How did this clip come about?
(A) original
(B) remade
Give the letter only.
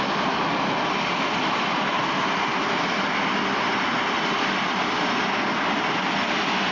A